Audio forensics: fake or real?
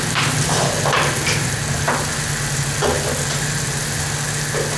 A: real